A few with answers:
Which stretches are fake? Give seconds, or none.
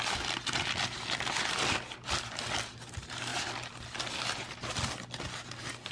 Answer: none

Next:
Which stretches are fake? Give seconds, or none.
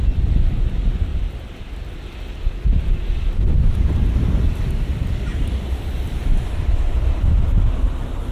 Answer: 1.1-1.7 (vocoder, BigVGAN v2); 5.3-7.1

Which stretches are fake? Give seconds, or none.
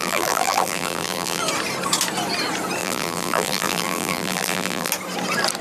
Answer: 0.0-1.4 (vocoder, BigVGAN v2); 2.8-4.9